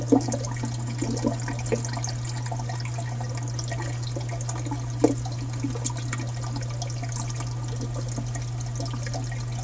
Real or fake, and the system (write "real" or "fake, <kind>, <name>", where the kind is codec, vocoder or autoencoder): real